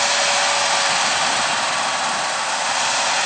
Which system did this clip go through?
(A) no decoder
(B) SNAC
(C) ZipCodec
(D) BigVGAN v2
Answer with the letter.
A